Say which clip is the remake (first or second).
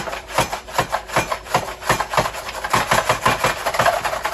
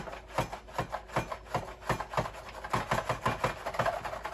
first